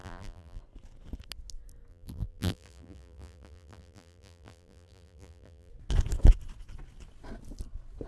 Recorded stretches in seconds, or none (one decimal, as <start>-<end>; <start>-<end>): 0.6-1.9; 5.7-8.1